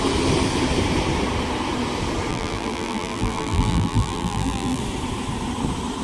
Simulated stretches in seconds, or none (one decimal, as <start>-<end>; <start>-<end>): 2.3-4.8